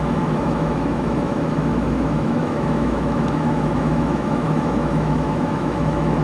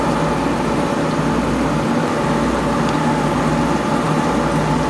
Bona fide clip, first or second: second